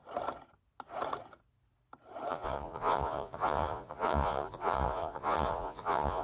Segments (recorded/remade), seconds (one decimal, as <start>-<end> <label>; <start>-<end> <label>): 0.0-2.3 recorded; 2.3-6.2 remade